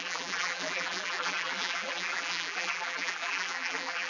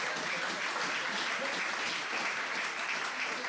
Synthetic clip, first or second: first